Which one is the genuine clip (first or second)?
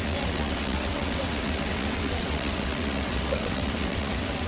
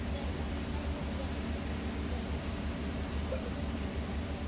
second